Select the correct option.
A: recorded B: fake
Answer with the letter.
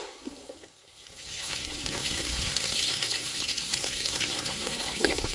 B